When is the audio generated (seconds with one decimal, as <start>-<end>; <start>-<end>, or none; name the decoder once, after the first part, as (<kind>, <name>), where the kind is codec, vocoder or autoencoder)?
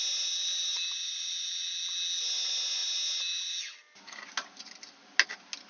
none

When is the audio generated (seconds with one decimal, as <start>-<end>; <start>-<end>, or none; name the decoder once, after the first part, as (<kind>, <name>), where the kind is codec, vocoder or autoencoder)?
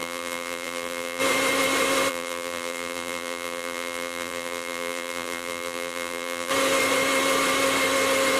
0.0-1.2 (vocoder, BigVGAN v2); 2.1-6.5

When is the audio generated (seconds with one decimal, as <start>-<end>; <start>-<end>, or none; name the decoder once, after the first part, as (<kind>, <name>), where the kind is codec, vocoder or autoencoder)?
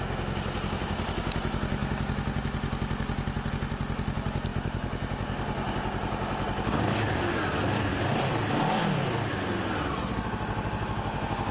none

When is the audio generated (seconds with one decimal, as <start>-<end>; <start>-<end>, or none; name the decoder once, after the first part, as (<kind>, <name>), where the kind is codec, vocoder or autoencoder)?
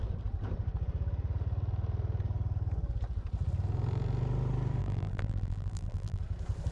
4.8-6.2 (vocoder, BigVGAN v2)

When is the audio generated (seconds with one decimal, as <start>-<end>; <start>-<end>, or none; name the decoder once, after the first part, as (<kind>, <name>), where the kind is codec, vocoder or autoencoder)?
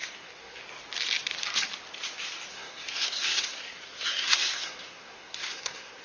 0.0-0.6 (codec, SNAC); 2.5-6.0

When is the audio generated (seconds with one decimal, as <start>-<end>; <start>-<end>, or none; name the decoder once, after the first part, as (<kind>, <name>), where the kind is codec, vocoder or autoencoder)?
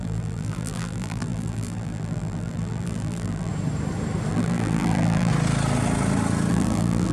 0.0-3.5 (vocoder, BigVGAN v2); 4.3-5.3; 6.5-7.1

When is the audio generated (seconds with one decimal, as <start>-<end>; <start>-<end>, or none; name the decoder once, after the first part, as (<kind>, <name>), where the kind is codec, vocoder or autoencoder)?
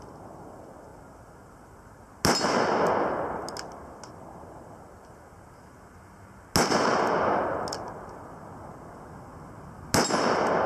none